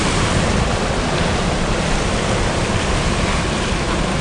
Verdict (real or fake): fake